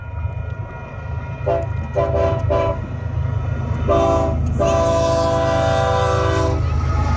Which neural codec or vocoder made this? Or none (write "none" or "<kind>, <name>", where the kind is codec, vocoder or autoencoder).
none